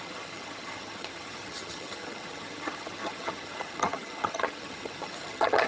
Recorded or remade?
remade